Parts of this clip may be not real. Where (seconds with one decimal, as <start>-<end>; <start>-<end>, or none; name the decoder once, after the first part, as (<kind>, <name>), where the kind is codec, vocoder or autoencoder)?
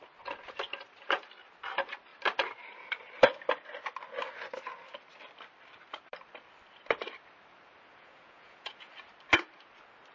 7.9-8.9 (vocoder, Vocos)